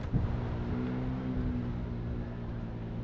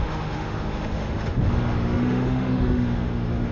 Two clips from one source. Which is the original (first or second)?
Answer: first